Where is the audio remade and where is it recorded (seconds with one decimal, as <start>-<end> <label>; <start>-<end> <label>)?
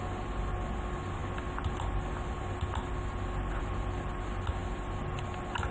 0.0-5.7 recorded